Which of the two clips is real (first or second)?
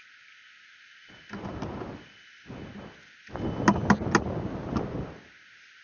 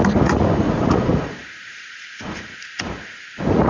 first